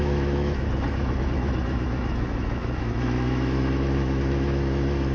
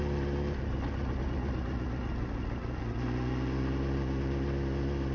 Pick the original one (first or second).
second